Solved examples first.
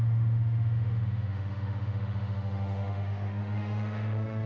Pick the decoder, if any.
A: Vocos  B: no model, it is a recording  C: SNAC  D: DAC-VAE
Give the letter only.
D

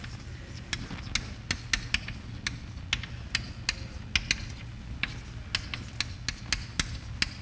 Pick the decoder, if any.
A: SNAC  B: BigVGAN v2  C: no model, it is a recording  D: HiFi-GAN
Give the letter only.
C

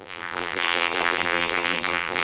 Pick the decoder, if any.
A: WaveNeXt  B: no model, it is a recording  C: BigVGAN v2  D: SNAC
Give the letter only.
C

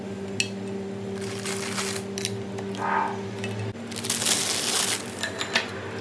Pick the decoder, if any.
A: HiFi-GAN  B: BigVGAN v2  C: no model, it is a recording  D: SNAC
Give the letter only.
C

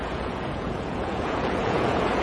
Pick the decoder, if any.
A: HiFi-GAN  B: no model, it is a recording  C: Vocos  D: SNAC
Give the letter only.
C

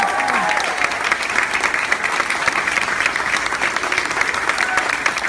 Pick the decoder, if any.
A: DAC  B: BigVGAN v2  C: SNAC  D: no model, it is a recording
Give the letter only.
D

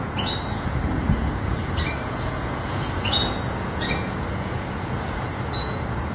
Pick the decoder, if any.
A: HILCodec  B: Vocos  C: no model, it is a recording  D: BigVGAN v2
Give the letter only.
B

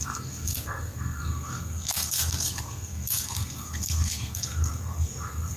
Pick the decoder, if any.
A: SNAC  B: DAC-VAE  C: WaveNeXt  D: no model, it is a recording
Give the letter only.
A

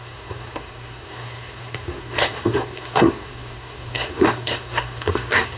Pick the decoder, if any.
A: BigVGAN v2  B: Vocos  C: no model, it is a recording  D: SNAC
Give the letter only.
D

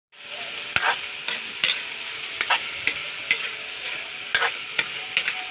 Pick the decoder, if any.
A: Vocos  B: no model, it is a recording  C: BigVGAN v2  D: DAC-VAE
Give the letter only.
B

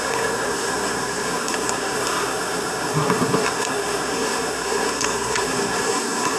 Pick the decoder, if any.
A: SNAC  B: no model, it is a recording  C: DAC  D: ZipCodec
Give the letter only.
A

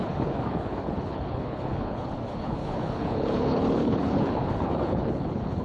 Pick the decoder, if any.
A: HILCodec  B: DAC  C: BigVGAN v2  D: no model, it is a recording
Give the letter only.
A